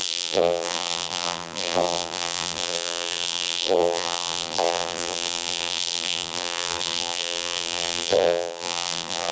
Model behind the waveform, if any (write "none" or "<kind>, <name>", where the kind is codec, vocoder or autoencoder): vocoder, BigVGAN v2